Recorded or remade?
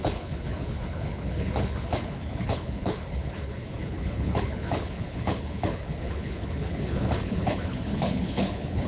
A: remade